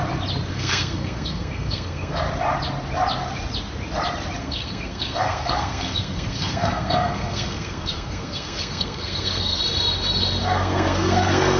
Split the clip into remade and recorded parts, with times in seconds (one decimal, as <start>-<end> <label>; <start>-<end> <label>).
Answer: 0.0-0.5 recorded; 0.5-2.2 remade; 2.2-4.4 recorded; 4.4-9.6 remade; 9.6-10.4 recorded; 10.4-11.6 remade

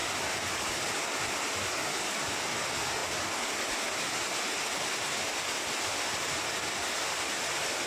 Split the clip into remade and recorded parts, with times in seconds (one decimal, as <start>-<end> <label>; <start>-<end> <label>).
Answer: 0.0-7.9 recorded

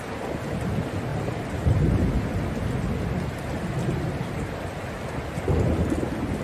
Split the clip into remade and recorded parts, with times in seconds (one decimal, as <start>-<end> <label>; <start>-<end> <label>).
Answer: 0.0-1.1 recorded; 1.1-2.1 remade; 2.1-6.4 recorded

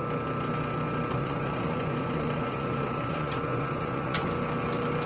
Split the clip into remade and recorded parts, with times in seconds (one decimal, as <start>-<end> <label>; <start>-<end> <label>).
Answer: 0.0-1.2 recorded; 1.2-4.3 remade; 4.3-5.1 recorded

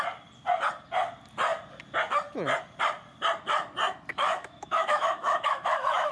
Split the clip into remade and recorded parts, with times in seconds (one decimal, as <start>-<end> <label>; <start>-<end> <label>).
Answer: 0.0-4.1 recorded; 4.1-6.1 remade

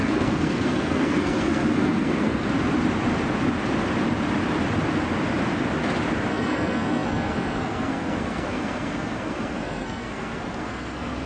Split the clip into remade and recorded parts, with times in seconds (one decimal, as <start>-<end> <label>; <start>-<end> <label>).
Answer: 0.0-2.4 remade; 2.4-6.3 recorded; 6.3-11.3 remade

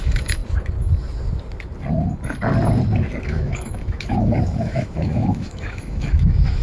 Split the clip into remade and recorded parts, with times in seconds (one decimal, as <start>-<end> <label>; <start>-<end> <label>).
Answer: 0.0-0.4 remade; 0.4-3.2 recorded; 3.2-6.6 remade

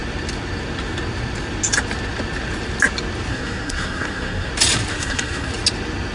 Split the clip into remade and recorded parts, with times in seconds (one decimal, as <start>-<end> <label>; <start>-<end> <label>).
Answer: 0.0-3.3 recorded; 3.3-4.5 remade; 4.5-4.9 recorded; 4.9-5.5 remade; 5.5-6.1 recorded